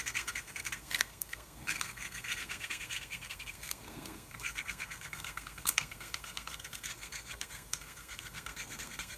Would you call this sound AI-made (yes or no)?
yes